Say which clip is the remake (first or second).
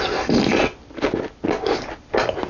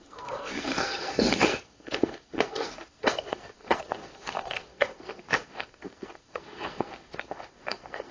second